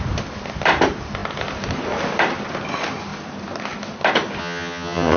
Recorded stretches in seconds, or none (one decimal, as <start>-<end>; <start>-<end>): 0.0-4.4

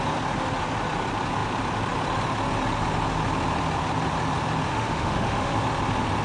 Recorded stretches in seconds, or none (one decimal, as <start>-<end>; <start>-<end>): 0.0-4.7; 5.6-6.2

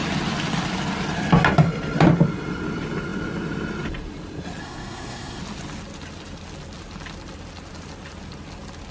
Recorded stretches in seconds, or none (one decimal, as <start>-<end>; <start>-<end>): 0.0-4.6; 5.4-8.9

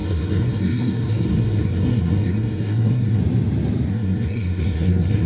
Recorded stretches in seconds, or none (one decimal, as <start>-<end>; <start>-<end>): 3.2-3.9

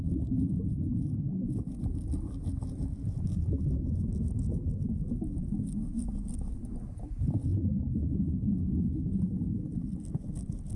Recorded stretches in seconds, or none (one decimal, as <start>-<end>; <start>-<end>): 0.0-10.8

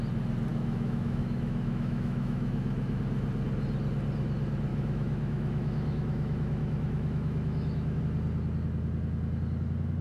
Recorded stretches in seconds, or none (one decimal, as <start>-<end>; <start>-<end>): 0.0-0.5; 3.0-4.7; 8.0-10.0